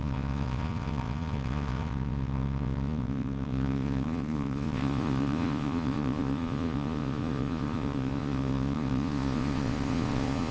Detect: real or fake fake